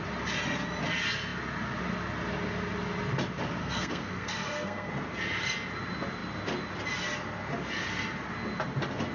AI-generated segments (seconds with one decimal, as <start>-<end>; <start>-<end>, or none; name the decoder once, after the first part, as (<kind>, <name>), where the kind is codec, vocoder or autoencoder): 3.6-4.9 (codec, SNAC)